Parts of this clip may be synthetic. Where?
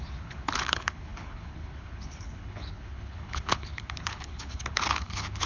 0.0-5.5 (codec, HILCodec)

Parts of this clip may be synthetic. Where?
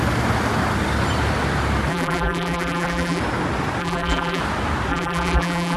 1.9-3.2 (vocoder, BigVGAN v2); 3.8-4.4; 4.9-5.8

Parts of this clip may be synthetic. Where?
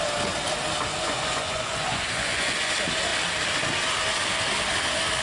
0.9-2.7 (vocoder, Vocos)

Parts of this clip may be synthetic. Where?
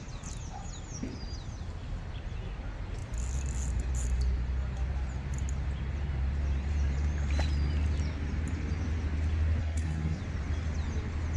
9.6-10.2 (codec, SNAC)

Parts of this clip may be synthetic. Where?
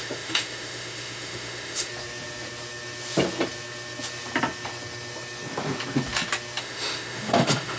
0.0-1.9 (autoencoder, DAC-VAE); 6.6-7.8